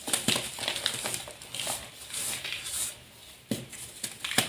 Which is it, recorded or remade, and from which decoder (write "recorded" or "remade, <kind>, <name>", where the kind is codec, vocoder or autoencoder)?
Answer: recorded